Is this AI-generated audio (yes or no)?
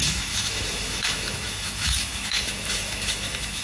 yes